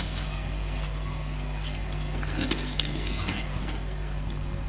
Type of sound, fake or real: fake